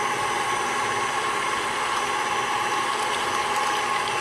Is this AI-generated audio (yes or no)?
no